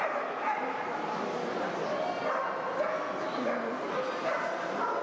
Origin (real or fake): real